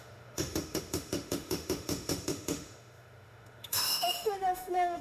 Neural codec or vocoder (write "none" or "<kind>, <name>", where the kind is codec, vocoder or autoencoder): autoencoder, DAC-VAE